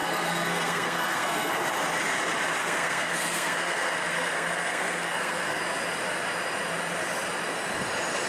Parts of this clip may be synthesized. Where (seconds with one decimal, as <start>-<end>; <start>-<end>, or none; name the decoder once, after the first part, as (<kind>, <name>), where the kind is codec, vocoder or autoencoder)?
0.0-1.5 (codec, SNAC); 2.6-5.6